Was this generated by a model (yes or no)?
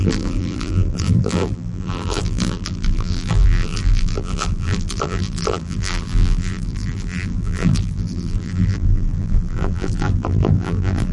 yes